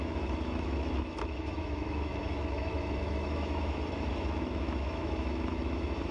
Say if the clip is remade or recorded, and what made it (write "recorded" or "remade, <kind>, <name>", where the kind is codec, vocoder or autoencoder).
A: remade, autoencoder, DAC-VAE